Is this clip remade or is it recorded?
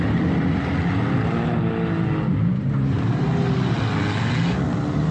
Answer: recorded